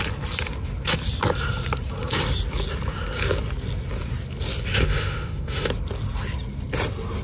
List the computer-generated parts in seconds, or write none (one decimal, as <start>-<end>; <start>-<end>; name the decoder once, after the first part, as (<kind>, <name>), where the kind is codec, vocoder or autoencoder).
4.7-5.7 (autoencoder, DAC-VAE)